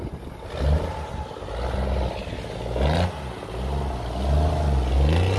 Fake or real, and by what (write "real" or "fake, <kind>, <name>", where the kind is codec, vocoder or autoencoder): real